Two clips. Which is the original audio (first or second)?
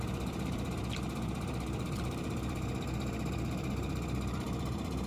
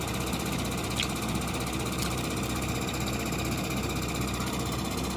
second